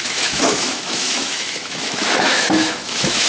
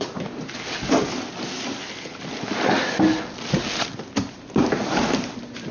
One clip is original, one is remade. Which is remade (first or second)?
first